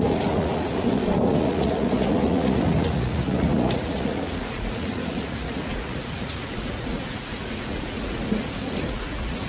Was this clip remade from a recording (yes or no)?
yes